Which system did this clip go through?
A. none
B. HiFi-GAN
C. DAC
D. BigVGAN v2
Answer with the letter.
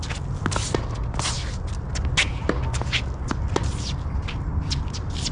A